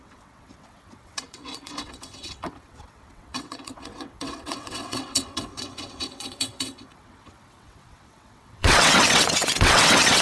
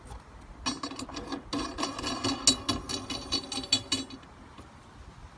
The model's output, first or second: first